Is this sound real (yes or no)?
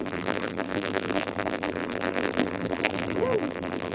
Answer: no